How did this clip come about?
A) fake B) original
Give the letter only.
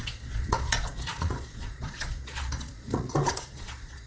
A